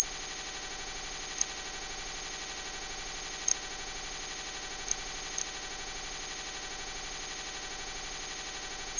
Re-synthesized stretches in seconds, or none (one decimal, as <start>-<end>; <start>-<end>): 0.0-9.0